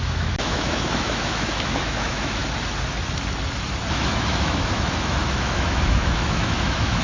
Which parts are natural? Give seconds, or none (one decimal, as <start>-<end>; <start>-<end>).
2.4-3.9